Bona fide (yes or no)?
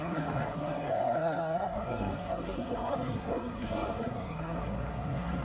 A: no